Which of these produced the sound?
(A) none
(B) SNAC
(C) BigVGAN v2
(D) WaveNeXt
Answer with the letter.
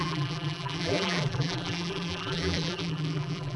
C